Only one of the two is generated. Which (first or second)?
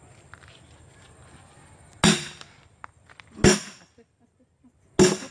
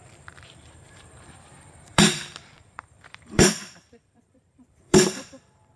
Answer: second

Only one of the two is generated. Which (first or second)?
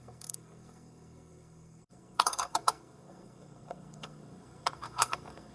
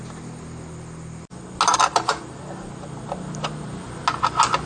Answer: first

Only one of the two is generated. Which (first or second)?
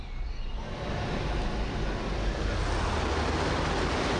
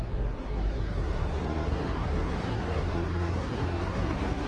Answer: second